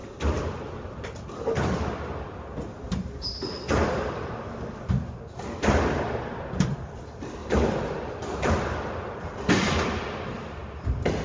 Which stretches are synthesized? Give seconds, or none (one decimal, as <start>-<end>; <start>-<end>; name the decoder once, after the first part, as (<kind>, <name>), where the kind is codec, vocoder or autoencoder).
none